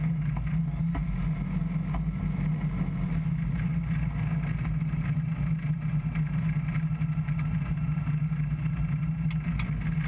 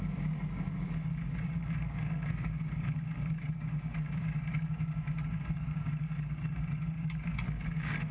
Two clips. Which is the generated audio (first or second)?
second